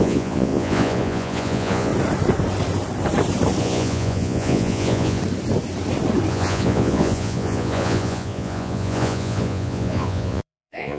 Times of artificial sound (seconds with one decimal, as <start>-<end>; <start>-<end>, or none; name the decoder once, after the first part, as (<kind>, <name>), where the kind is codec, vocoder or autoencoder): 0.0-1.9 (vocoder, Vocos); 3.6-5.2; 6.3-11.0